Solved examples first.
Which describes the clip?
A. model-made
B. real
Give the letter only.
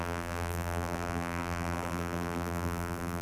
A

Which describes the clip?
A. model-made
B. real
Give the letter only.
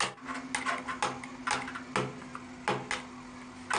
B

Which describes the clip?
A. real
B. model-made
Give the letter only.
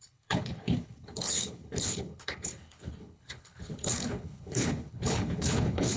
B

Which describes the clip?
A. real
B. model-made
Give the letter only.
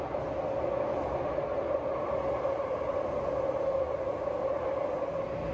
A